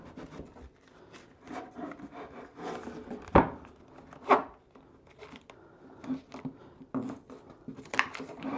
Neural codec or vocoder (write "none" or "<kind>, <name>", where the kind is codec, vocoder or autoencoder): none